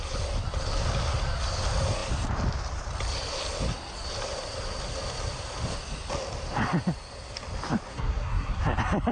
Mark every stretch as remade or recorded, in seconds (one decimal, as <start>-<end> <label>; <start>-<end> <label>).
0.0-7.9 recorded; 7.9-8.6 remade; 8.6-9.1 recorded